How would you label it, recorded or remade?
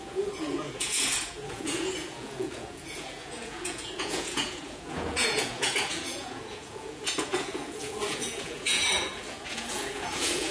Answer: remade